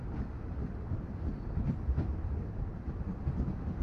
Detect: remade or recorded recorded